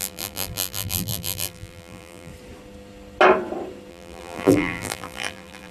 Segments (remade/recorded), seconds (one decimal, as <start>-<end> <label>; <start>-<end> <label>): 0.0-2.3 remade; 2.3-3.9 recorded; 3.9-5.7 remade